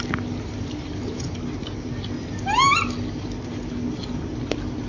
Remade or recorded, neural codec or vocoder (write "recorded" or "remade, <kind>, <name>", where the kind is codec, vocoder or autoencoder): recorded